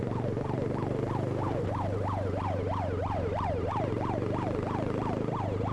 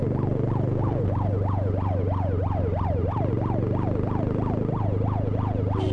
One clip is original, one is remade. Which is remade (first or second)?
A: first